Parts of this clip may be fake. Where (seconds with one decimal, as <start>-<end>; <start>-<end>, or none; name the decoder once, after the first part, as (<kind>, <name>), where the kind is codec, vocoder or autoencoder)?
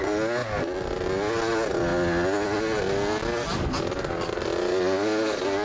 none